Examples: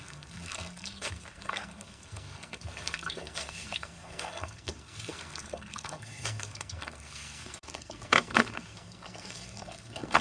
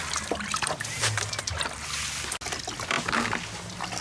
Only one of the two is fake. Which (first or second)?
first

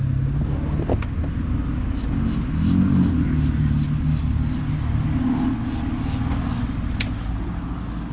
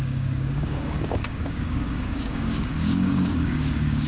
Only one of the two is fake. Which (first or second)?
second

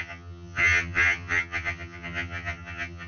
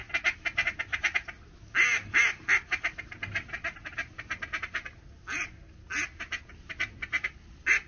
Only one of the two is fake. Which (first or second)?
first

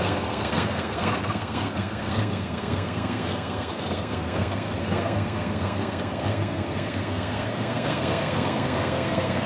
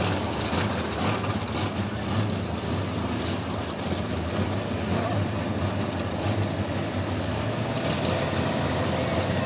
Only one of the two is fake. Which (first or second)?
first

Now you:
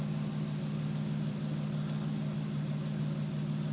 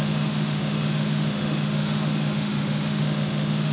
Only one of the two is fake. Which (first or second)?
second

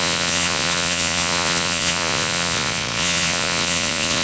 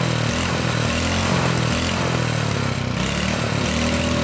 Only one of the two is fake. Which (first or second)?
first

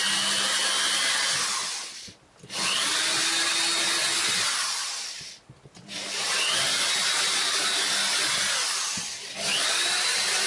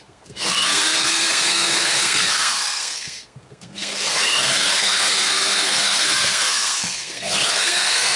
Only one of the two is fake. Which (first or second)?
second